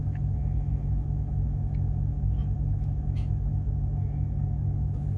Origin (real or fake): fake